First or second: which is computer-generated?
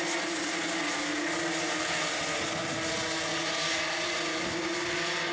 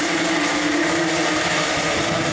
second